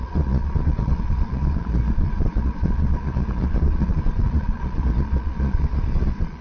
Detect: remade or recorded remade